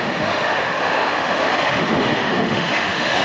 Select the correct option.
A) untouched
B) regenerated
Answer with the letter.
B